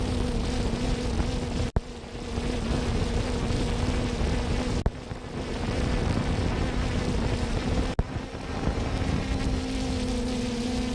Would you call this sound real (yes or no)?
yes